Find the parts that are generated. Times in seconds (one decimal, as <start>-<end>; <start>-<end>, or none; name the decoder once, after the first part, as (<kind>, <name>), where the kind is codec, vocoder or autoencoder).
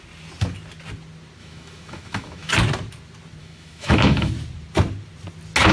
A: 1.4-2.5 (autoencoder, DAC-VAE); 3.4-4.3